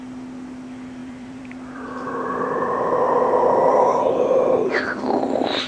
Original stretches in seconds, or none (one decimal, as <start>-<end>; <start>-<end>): 0.0-1.0; 4.4-5.7